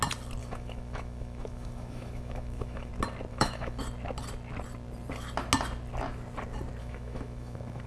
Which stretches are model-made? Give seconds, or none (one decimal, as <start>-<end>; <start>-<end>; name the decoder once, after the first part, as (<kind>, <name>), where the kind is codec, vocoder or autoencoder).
0.4-2.9 (autoencoder, DAC-VAE); 3.3-3.8; 6.8-7.9